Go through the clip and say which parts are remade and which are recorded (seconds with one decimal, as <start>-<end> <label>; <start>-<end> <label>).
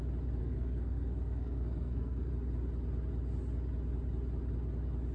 0.0-0.4 recorded; 0.4-2.3 remade; 2.3-5.1 recorded